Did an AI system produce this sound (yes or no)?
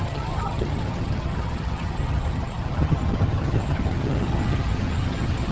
yes